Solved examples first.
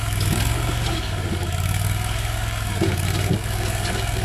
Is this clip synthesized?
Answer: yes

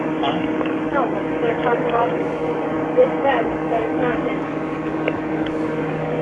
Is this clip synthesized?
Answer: yes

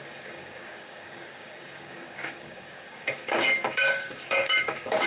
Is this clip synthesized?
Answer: yes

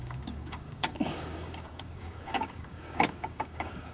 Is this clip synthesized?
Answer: yes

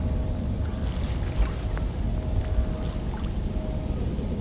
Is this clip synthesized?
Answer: no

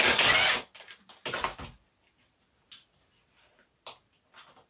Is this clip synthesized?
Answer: no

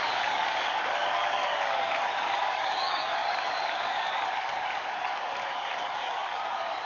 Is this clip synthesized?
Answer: yes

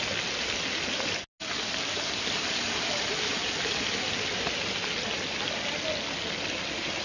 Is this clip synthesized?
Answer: no